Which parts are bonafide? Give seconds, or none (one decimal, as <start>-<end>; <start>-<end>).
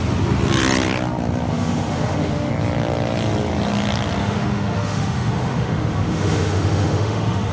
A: 0.0-1.5; 2.5-4.2